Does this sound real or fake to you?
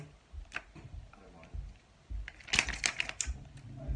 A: real